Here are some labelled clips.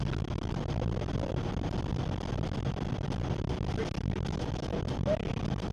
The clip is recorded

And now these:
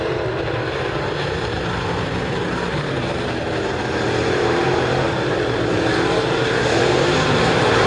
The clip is remade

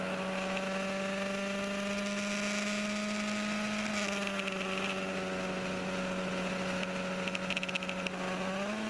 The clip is recorded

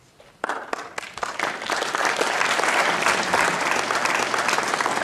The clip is recorded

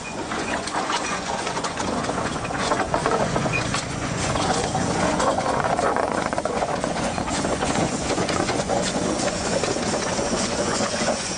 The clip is remade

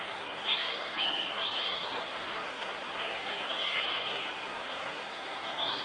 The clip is remade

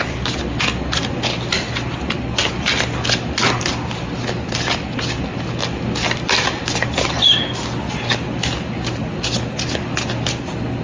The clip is recorded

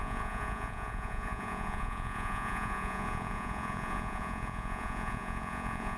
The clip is remade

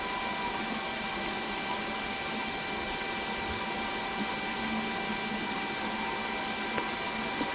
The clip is recorded